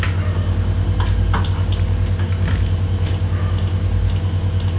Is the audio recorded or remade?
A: recorded